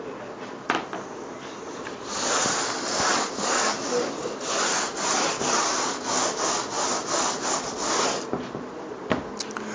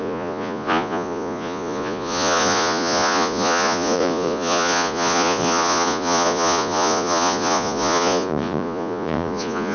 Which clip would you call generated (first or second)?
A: second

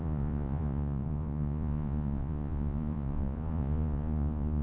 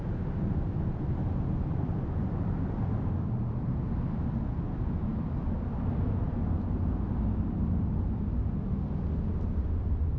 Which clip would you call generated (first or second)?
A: first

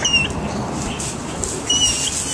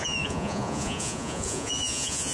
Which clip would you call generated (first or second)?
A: second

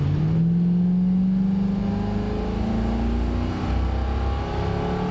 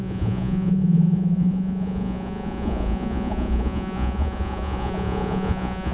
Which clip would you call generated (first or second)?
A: second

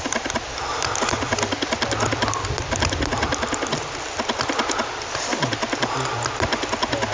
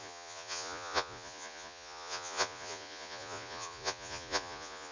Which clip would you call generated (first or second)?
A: second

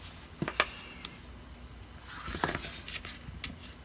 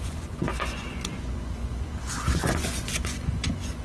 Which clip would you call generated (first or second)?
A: second